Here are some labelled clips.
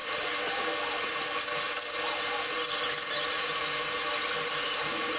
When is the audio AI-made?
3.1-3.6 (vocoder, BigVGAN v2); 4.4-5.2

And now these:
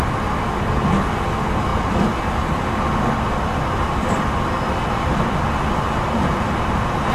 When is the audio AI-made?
none

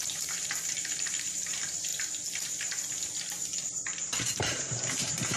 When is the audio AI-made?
0.0-1.9 (vocoder, BigVGAN v2); 3.6-5.4

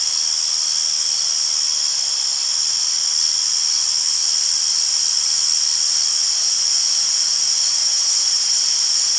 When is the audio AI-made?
7.8-8.6 (vocoder, HiFi-GAN)

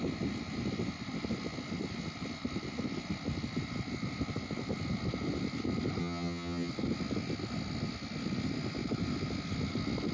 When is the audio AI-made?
6.0-6.7 (vocoder, HiFi-GAN)